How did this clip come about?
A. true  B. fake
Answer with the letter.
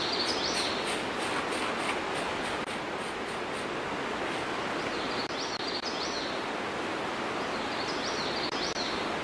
A